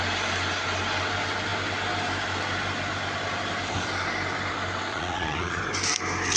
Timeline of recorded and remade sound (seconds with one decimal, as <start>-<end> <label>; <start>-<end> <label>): 0.0-4.9 recorded; 4.9-5.6 remade; 5.6-6.4 recorded